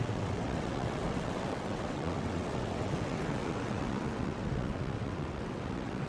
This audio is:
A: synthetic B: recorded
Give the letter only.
A